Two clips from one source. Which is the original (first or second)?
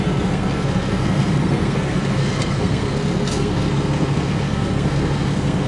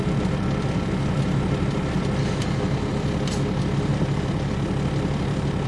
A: second